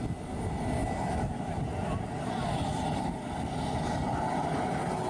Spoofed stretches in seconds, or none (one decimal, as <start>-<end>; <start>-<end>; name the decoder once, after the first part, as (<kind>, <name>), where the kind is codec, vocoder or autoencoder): none